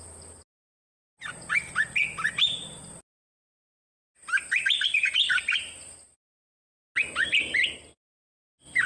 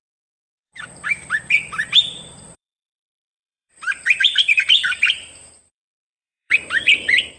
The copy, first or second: second